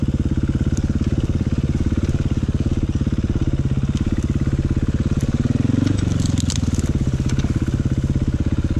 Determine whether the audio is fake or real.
real